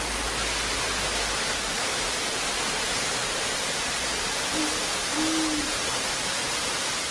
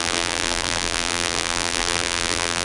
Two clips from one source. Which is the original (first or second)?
first